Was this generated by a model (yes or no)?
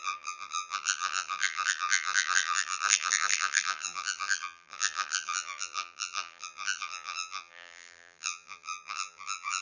yes